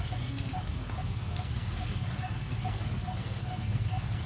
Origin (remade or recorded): remade